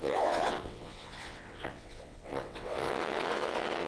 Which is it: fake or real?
fake